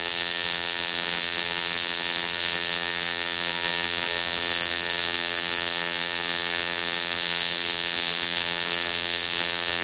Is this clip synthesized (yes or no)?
yes